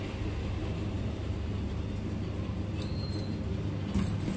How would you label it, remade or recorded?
recorded